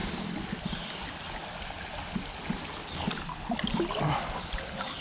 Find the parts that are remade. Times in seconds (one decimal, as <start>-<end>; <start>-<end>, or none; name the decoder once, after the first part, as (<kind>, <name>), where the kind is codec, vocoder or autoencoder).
none